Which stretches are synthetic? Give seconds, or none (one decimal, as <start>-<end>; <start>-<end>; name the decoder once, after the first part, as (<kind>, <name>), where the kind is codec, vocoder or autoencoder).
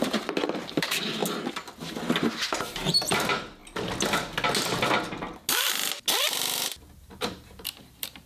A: 0.0-1.2 (vocoder, BigVGAN v2); 2.3-3.6; 7.0-8.3